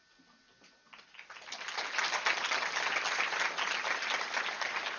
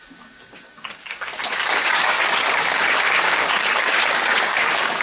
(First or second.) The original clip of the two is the first